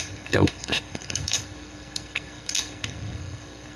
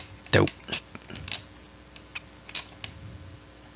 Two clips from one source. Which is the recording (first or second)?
second